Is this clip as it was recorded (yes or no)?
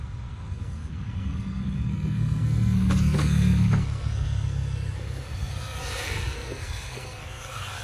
no